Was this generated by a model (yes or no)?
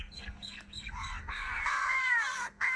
yes